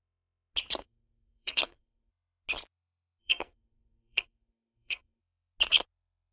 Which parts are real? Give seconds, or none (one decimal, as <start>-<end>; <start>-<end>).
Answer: 0.0-0.8; 2.1-3.2; 5.2-6.3